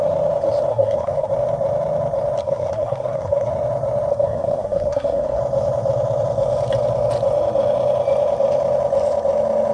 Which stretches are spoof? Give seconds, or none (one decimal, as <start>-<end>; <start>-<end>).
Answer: 0.7-1.3; 2.4-3.5; 4.1-5.4